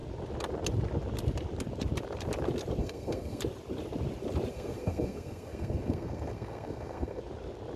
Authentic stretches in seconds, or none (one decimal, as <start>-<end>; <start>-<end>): 0.0-2.8; 3.4-4.5; 7.2-7.8